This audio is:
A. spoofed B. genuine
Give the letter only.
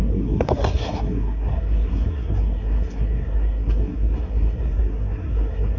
A